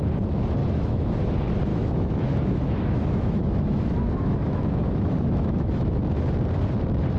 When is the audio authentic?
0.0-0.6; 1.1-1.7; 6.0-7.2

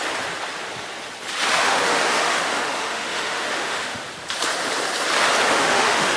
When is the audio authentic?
0.0-1.5; 4.0-5.5